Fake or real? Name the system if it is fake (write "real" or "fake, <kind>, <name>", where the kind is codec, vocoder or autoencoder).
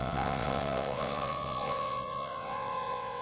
fake, vocoder, WaveNeXt